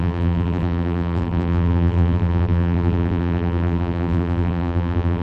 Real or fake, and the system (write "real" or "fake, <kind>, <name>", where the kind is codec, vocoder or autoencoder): fake, vocoder, BigVGAN v2